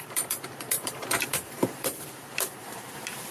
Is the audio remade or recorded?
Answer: remade